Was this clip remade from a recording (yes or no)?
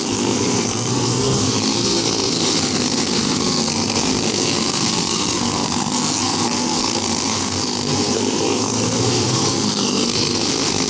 yes